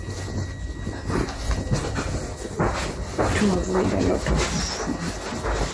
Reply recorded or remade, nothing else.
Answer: recorded